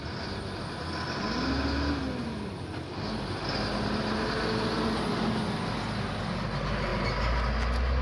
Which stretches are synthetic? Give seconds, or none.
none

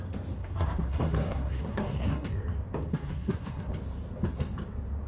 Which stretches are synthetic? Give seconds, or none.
0.4-2.4; 2.9-3.7

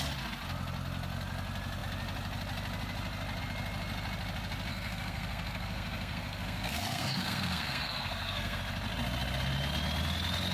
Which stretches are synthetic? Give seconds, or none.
4.7-8.6

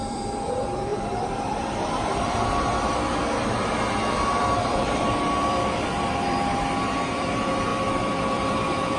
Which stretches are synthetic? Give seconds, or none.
0.0-7.7; 8.2-9.0